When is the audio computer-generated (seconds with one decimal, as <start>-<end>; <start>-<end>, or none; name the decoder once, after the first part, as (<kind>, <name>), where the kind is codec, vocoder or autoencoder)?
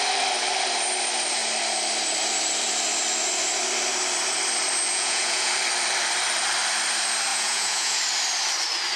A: 4.9-5.5 (vocoder, Vocos); 7.3-8.0